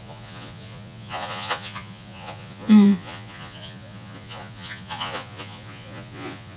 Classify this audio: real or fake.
fake